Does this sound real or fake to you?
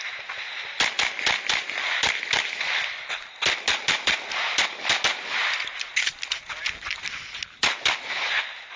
real